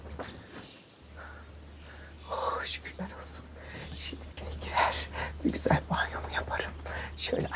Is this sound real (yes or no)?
yes